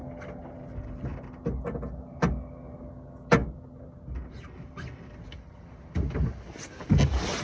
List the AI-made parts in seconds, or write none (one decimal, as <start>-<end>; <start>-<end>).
none